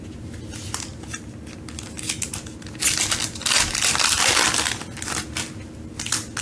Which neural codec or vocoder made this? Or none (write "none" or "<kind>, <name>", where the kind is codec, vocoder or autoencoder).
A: none